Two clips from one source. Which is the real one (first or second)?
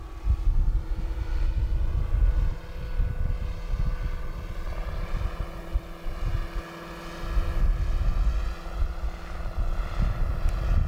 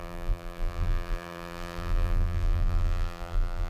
first